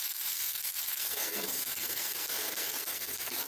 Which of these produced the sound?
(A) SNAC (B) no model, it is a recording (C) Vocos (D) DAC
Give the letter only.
A